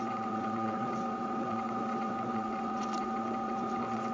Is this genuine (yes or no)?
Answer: no